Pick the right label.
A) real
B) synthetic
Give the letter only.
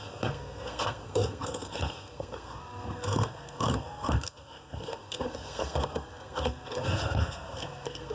B